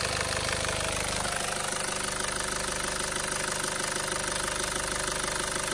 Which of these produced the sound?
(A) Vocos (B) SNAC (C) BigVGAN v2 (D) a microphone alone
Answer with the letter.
D